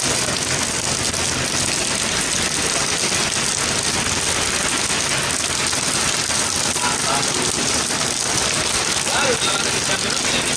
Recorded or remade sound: recorded